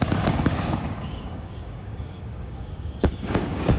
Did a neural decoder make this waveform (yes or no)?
yes